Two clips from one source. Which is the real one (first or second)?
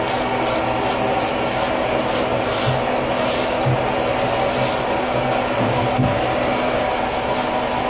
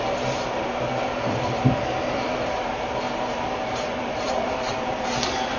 first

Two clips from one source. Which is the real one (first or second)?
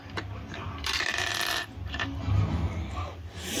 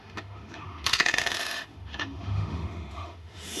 first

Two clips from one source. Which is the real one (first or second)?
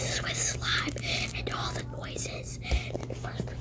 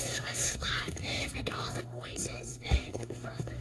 first